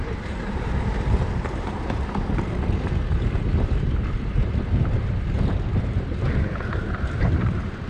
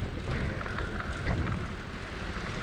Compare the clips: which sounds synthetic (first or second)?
first